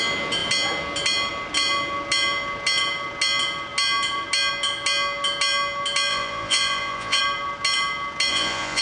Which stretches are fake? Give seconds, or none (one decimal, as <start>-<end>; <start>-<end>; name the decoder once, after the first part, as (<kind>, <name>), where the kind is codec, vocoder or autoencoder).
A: 6.1-7.2 (vocoder, Vocos); 8.3-8.8